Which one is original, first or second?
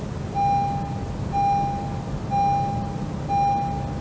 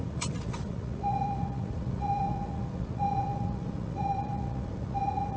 first